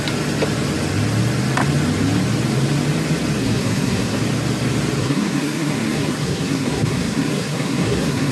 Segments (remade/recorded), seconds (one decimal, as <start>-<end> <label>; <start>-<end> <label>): 0.0-3.4 recorded; 3.4-4.2 remade; 4.2-5.0 recorded; 5.0-8.3 remade